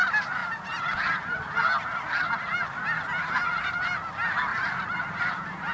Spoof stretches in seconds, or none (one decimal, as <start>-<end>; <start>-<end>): 4.5-5.2